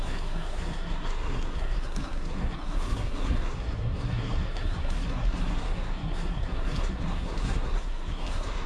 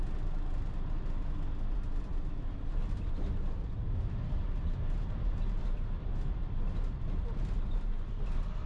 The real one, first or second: second